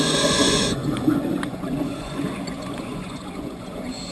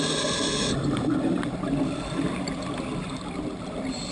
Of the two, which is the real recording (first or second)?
second